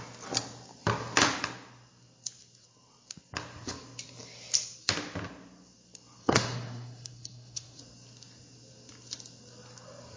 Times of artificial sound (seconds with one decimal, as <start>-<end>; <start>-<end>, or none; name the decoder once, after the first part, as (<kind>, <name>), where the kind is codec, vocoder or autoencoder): 6.2-7.8 (codec, SNAC)